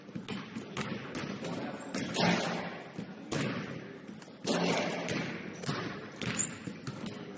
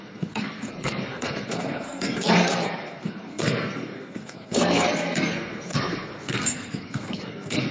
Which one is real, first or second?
first